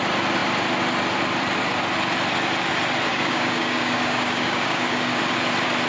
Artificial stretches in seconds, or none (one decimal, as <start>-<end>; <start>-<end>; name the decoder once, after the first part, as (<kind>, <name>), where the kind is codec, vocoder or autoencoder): 3.1-5.2 (codec, DAC)